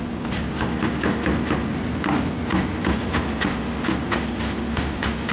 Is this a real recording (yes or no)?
yes